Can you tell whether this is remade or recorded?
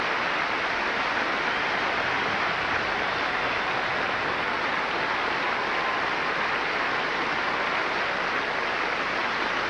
recorded